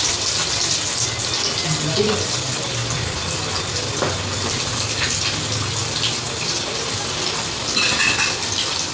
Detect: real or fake real